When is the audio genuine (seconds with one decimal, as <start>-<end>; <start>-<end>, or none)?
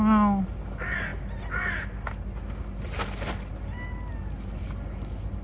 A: 0.0-5.4